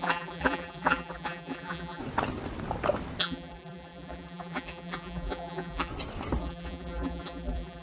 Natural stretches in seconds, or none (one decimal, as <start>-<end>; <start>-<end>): 2.0-3.2; 5.9-6.4